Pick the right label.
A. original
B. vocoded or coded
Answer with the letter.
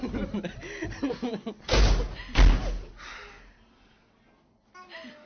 A